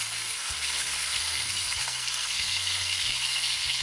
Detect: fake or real fake